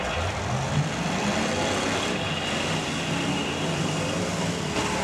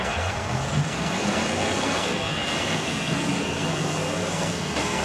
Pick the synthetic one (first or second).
second